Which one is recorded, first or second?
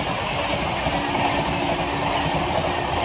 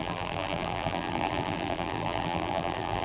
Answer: first